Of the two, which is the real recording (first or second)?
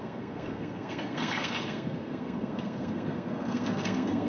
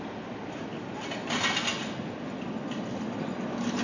second